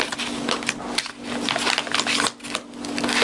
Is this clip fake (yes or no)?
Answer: no